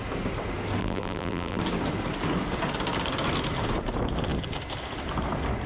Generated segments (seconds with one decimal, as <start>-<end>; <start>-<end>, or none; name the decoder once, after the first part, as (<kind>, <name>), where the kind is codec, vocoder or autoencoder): 0.8-1.6 (vocoder, BigVGAN v2)